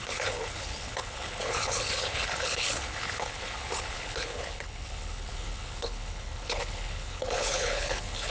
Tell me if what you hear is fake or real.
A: fake